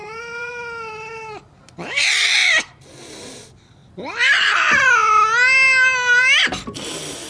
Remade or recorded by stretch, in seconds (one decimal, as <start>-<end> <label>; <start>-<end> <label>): 0.0-0.5 remade; 0.5-7.3 recorded